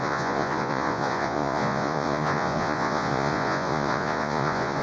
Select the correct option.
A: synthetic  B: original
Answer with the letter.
A